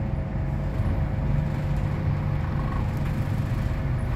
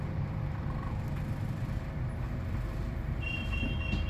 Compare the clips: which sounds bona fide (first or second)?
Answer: first